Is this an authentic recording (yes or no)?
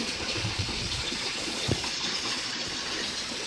no